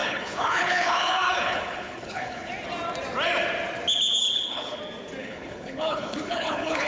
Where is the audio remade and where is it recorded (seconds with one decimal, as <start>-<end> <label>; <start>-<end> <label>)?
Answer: 0.0-2.5 remade; 2.5-4.2 recorded; 4.2-4.8 remade; 4.8-5.2 recorded; 5.2-6.9 remade